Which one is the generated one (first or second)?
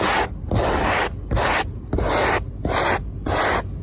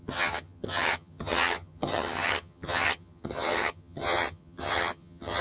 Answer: second